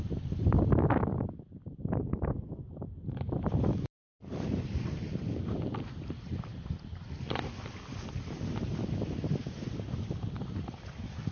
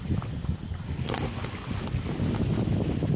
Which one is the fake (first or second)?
first